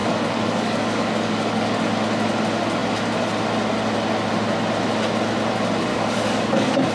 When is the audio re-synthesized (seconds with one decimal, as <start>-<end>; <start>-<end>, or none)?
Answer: 0.0-1.8; 5.9-6.9